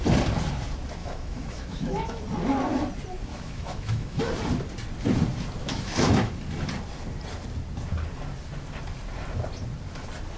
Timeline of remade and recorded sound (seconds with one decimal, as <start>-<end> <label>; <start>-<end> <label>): 0.0-1.0 recorded; 1.0-2.2 remade; 2.2-3.3 recorded; 3.3-4.2 remade; 4.2-5.6 recorded; 5.6-6.3 remade; 6.3-10.4 recorded